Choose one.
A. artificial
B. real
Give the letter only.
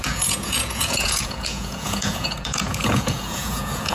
A